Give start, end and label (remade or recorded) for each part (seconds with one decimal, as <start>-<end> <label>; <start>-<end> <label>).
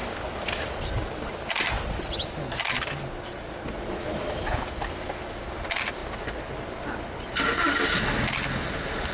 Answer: 0.0-9.1 recorded